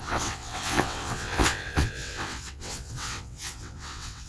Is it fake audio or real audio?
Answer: fake